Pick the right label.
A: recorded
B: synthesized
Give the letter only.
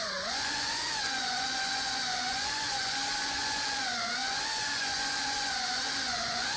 B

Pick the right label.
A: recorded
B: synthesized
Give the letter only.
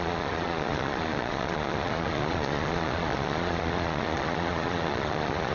B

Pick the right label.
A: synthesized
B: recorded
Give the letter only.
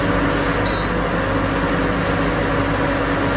B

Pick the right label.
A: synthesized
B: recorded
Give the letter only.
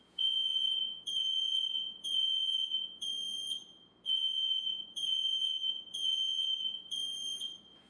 A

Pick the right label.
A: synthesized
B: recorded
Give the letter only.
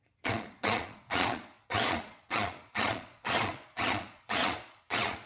A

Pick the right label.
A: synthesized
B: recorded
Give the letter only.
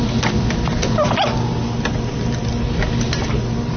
B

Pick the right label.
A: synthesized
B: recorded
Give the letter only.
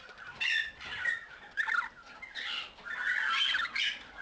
B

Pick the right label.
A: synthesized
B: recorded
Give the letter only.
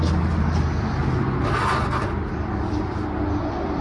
B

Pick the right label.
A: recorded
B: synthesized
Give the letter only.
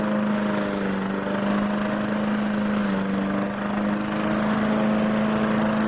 A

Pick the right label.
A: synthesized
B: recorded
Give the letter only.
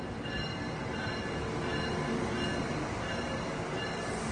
B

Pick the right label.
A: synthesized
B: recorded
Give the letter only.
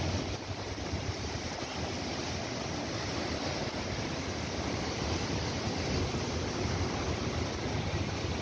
B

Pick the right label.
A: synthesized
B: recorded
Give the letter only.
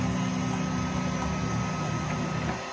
B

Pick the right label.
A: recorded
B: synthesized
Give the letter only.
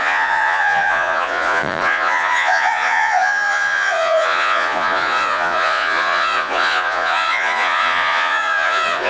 B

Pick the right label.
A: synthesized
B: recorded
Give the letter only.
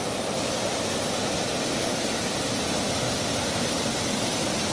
B